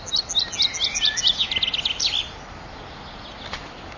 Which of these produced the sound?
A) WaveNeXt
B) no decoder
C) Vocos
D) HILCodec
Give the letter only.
B